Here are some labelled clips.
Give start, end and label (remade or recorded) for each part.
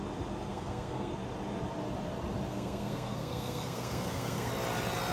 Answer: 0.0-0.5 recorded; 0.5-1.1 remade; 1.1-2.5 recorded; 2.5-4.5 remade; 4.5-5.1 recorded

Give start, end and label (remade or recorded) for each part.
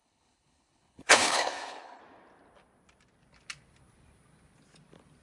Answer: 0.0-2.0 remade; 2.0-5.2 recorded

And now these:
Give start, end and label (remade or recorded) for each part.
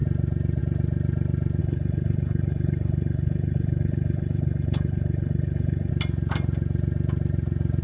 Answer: 0.0-1.6 recorded; 1.6-5.9 remade; 5.9-7.8 recorded